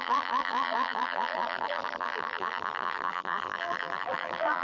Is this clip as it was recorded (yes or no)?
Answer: no